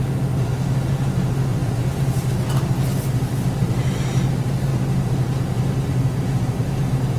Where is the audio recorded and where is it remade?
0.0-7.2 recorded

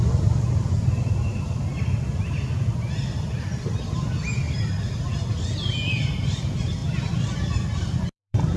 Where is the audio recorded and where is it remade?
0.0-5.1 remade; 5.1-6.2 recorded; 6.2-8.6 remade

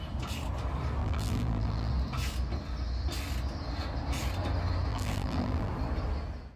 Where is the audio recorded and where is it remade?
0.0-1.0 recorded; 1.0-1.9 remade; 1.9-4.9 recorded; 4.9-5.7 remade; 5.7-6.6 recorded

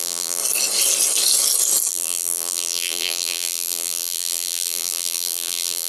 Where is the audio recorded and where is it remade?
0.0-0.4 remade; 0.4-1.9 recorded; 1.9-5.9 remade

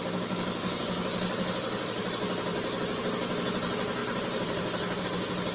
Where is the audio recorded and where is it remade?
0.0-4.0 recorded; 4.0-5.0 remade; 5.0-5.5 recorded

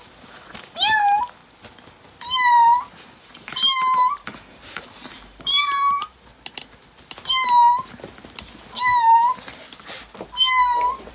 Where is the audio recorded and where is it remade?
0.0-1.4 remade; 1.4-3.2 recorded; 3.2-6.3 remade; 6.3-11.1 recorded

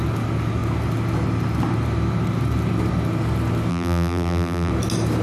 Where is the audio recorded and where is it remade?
0.0-3.7 recorded; 3.7-4.7 remade; 4.7-5.2 recorded

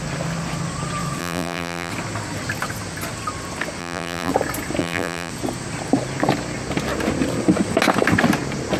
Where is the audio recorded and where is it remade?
0.0-1.2 recorded; 1.2-1.9 remade; 1.9-3.8 recorded; 3.8-4.3 remade; 4.3-4.8 recorded; 4.8-5.3 remade; 5.3-8.8 recorded